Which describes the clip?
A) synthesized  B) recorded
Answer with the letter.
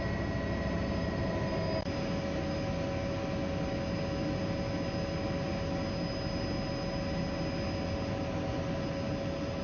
B